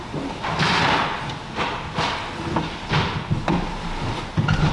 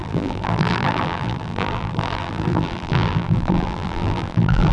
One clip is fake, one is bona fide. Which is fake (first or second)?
second